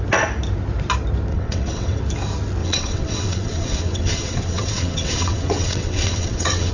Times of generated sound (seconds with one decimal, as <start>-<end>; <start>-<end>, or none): 1.3-2.0; 2.6-6.7